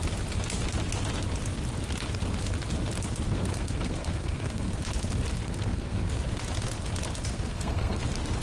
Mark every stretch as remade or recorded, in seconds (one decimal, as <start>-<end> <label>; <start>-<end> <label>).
0.0-3.3 recorded; 3.3-4.8 remade; 4.8-5.4 recorded; 5.4-6.1 remade; 6.1-7.3 recorded; 7.3-8.0 remade; 8.0-8.4 recorded